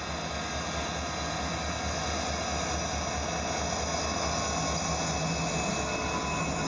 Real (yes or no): yes